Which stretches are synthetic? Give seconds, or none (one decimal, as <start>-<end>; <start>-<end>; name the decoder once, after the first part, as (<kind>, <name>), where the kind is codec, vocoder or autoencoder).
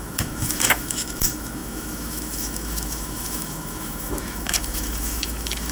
0.0-5.7 (autoencoder, DAC-VAE)